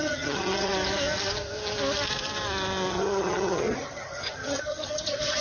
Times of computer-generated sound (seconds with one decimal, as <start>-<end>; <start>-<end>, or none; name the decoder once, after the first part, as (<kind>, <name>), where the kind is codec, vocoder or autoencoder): 0.0-0.7 (vocoder, HiFi-GAN); 2.9-5.4

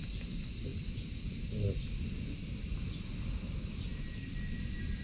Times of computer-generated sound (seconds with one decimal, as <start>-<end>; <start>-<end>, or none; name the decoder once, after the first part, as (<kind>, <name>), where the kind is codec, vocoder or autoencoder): none